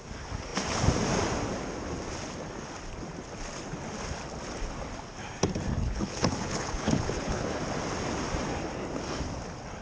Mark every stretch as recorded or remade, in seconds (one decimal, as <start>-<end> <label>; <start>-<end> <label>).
0.0-5.8 recorded; 5.8-7.6 remade; 7.6-9.8 recorded